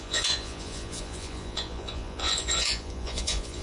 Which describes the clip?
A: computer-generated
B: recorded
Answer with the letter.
A